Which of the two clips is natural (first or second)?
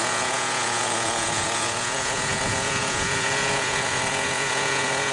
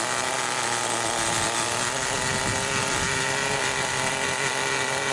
second